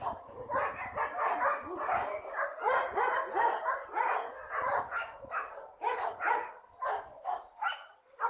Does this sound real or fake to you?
real